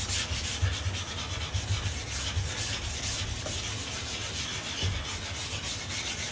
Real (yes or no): yes